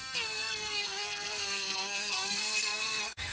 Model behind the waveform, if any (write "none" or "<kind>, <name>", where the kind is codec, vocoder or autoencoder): codec, SNAC